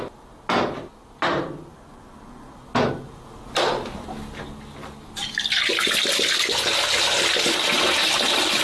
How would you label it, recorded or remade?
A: recorded